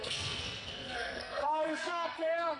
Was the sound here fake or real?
fake